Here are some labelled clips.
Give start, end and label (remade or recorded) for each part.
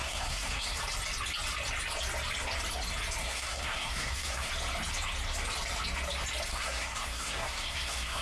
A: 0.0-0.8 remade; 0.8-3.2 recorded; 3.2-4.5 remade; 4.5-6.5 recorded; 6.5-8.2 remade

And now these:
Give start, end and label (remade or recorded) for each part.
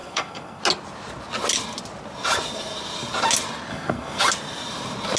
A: 0.0-0.6 remade; 0.6-3.7 recorded; 3.7-4.2 remade; 4.2-5.2 recorded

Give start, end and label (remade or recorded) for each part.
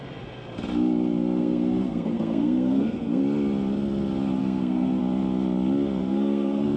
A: 0.0-1.4 recorded; 1.4-3.2 remade; 3.2-4.4 recorded; 4.4-5.0 remade; 5.0-6.0 recorded; 6.0-6.8 remade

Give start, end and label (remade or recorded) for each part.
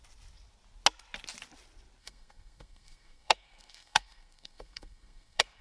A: 0.0-2.0 recorded; 2.0-5.6 remade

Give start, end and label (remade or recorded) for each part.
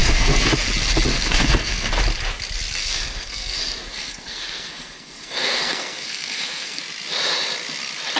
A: 0.0-0.5 remade; 0.5-1.1 recorded; 1.1-1.9 remade; 1.9-2.8 recorded; 2.8-6.8 remade; 6.8-8.2 recorded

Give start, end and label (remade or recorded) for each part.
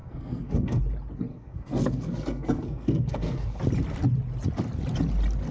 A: 0.0-0.8 remade; 0.8-1.3 recorded; 1.3-3.6 remade; 3.6-5.5 recorded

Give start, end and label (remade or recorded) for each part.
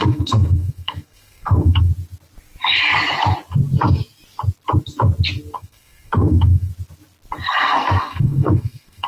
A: 0.0-1.9 remade; 1.9-5.5 recorded; 5.5-6.7 remade; 6.7-7.6 recorded; 7.6-9.1 remade